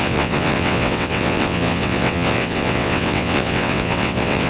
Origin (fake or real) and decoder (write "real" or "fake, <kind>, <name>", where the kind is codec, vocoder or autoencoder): fake, vocoder, WaveNeXt